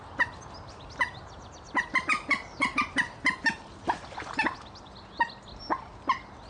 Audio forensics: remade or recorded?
recorded